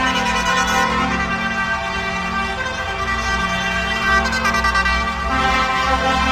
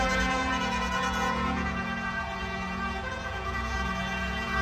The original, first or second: first